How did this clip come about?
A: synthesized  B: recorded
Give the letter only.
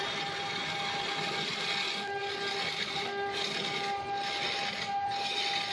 B